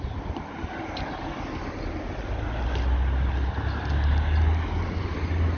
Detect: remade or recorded recorded